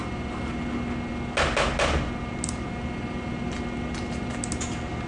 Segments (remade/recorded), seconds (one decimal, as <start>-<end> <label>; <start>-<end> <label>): 0.0-5.1 recorded